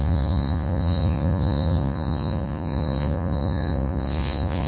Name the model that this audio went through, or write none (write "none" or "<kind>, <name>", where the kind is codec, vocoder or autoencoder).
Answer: vocoder, Vocos